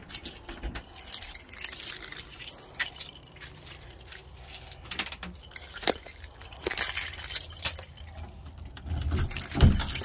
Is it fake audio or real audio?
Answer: real